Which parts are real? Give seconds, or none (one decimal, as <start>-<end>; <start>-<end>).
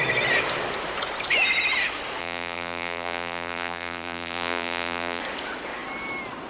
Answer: 0.0-2.2; 5.2-6.5